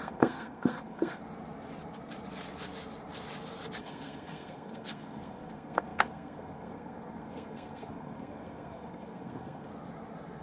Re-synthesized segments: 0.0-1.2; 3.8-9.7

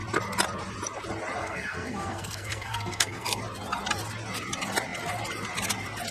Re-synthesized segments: 1.4-3.4

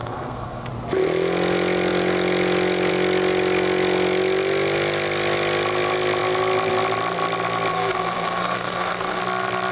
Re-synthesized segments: 0.0-0.7; 7.7-9.2

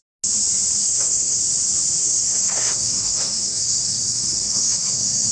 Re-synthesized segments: 0.8-1.4; 2.0-5.3

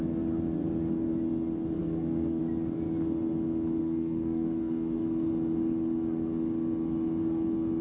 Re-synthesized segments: 1.8-2.4; 3.8-5.3